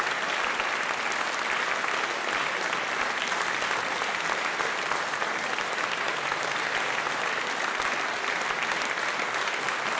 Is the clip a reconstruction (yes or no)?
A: no